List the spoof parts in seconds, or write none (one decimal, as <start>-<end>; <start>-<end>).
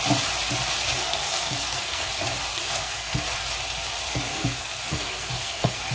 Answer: 1.0-2.1; 2.5-3.2; 4.1-5.9